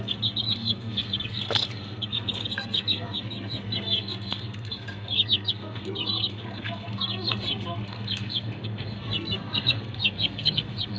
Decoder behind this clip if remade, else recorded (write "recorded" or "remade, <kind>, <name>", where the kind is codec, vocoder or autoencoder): remade, codec, SNAC